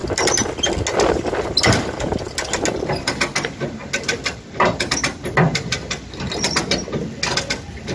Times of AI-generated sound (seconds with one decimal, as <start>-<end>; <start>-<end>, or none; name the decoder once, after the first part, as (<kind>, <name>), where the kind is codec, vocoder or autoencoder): none